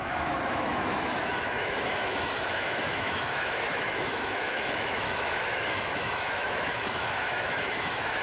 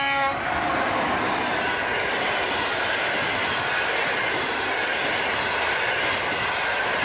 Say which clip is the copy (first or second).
first